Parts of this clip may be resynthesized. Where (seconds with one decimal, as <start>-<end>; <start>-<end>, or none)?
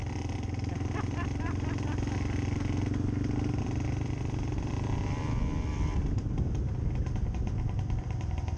3.6-4.7; 7.8-8.6